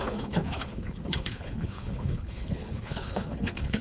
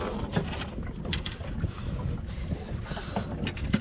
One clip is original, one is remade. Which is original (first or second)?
second